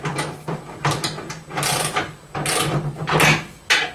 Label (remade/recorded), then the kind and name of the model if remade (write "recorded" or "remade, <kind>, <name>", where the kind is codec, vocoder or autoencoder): recorded